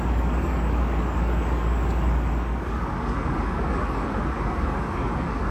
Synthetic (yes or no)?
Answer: yes